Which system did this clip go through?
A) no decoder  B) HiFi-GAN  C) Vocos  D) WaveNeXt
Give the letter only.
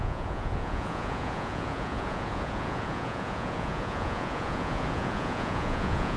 C